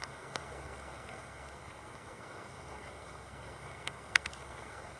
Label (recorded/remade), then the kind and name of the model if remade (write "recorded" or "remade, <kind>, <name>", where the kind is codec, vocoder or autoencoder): remade, codec, SNAC